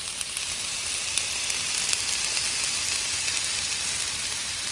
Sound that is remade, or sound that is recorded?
recorded